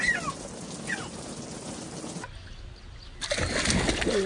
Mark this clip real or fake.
real